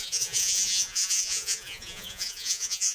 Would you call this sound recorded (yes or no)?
no